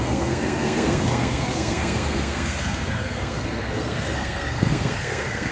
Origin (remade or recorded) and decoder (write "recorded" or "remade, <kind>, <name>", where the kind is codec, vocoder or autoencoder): remade, codec, SNAC